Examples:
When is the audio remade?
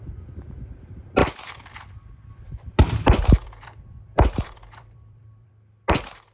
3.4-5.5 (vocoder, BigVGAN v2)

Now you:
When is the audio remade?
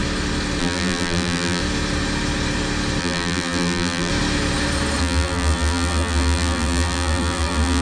0.6-1.6 (vocoder, BigVGAN v2); 3.0-4.1; 5.0-7.8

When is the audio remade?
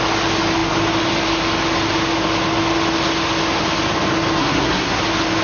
4.4-5.0 (codec, SNAC)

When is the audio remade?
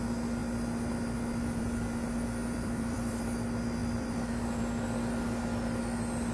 2.4-3.2 (vocoder, BigVGAN v2); 3.8-4.6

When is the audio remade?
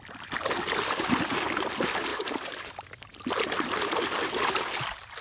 2.1-2.7 (vocoder, BigVGAN v2)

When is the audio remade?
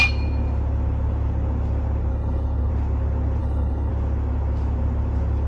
2.1-2.7 (codec, HILCodec); 3.4-3.9